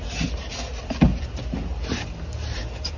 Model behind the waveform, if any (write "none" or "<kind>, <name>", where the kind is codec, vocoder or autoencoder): none